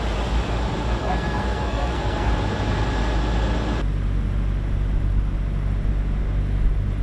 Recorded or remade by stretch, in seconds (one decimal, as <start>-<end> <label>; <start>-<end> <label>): 0.0-1.0 recorded; 1.0-2.3 remade; 2.3-7.0 recorded